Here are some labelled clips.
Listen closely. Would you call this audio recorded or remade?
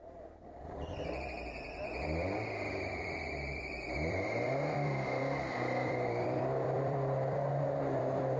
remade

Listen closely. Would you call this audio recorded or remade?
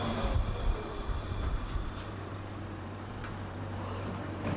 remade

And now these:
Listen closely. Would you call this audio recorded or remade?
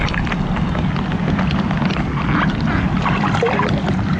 recorded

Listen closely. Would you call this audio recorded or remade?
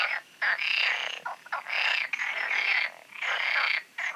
recorded